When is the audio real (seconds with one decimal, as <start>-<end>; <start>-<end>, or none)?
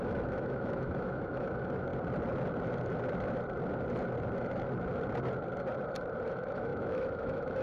1.9-6.3